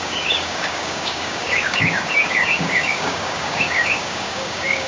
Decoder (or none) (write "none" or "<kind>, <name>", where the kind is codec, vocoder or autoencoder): codec, DAC